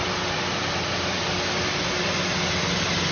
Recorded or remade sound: recorded